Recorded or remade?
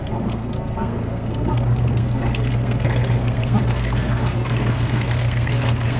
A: remade